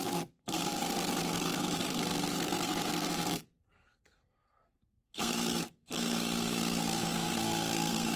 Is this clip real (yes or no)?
no